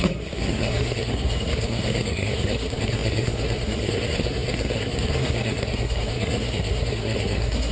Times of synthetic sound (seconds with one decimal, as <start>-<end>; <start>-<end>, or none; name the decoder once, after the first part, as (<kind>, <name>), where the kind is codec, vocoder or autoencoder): 0.0-7.7 (codec, SNAC)